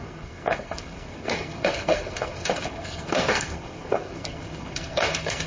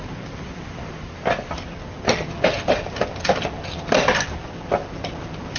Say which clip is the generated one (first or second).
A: first